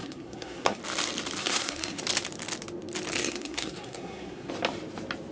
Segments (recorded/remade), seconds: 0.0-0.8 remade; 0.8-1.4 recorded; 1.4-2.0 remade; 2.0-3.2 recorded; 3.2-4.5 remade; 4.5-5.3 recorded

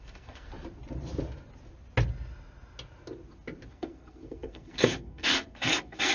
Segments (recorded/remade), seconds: 0.0-0.5 remade; 0.5-3.7 recorded; 3.7-6.1 remade